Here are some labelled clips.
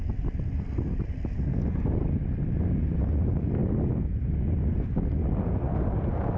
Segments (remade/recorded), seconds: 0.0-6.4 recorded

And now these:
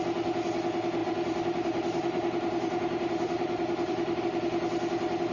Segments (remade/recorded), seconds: 0.0-1.0 recorded; 1.0-4.2 remade; 4.2-5.3 recorded

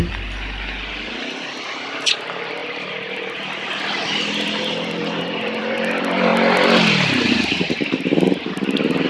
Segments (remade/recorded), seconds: 0.0-6.3 remade; 6.3-9.1 recorded